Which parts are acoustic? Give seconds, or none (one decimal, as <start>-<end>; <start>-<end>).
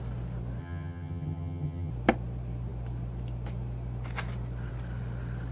0.0-0.6; 1.9-5.5